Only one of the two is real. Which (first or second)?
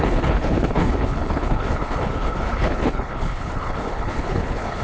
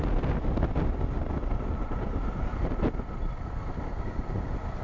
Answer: second